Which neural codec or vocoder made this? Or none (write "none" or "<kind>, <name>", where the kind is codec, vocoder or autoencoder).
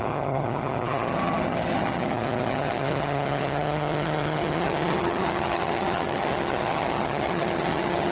vocoder, HiFi-GAN